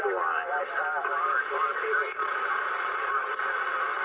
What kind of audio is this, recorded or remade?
recorded